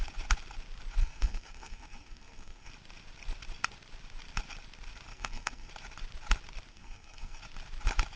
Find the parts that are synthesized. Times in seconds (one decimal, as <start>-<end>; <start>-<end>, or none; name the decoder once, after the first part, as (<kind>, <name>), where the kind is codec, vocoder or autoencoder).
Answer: 1.0-2.7 (codec, SNAC); 5.1-5.7; 6.7-7.4